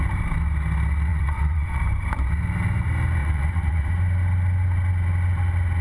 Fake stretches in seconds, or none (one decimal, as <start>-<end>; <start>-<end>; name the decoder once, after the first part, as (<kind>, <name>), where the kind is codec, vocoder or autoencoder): 1.1-1.8 (vocoder, WaveNeXt); 3.2-3.9

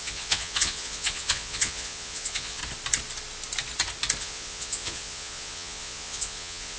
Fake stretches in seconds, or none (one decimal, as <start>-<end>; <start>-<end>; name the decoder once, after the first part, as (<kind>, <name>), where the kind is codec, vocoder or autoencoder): 0.0-2.6 (vocoder, Vocos); 4.2-6.8

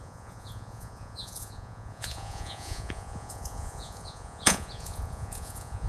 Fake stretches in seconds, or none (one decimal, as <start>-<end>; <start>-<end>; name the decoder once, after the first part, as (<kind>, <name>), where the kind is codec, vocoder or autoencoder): 0.0-5.9 (vocoder, Vocos)

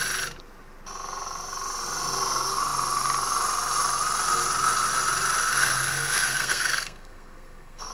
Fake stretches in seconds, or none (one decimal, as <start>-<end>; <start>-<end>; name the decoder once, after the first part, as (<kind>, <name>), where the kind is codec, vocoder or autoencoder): 5.5-7.9 (codec, SNAC)

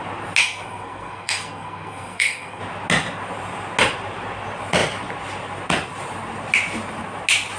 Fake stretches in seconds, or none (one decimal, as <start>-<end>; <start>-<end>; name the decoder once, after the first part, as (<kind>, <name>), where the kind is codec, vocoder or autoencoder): 0.4-2.6 (codec, SNAC)